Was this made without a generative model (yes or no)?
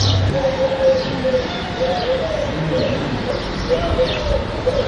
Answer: no